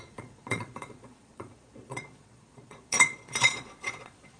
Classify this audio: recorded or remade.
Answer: remade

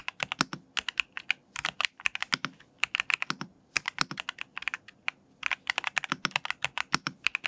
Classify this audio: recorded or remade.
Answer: recorded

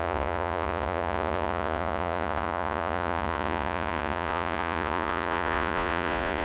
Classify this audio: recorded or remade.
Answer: remade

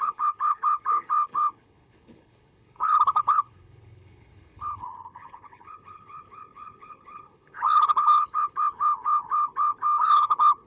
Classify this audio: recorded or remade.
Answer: remade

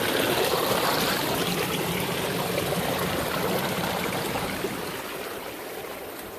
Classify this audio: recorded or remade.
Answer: recorded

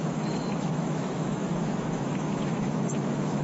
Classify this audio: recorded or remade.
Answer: remade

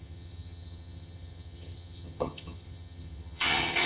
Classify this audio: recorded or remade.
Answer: remade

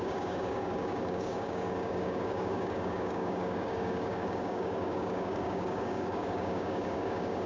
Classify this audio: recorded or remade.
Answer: remade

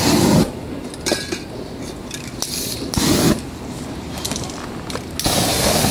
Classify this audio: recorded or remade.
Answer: recorded